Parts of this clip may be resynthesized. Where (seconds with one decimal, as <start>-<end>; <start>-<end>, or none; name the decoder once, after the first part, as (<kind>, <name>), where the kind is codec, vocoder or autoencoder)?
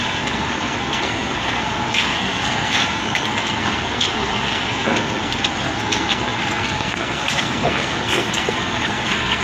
0.0-9.4 (codec, SNAC)